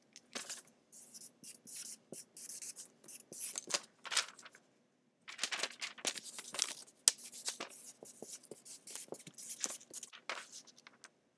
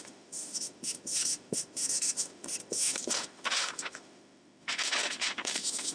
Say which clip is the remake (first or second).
second